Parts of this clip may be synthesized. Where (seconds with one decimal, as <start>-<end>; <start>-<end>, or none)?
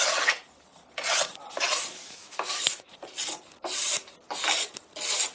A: 1.9-2.9